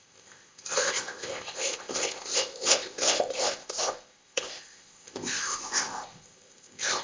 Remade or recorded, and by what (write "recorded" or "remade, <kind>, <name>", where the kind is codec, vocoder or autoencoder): remade, codec, ZipCodec